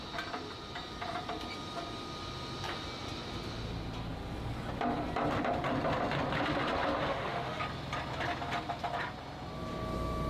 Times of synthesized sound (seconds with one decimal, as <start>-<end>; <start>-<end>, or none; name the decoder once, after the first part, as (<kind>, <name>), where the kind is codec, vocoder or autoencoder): 7.1-7.6 (autoencoder, DAC-VAE)